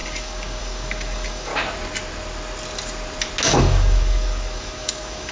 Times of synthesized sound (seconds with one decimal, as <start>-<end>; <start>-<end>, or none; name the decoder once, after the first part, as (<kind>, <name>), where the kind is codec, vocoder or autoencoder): 0.0-1.5 (codec, DAC); 3.6-5.3